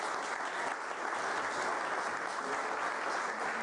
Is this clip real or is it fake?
real